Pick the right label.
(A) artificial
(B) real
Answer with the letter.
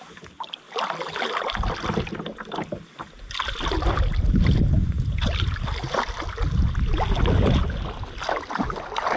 B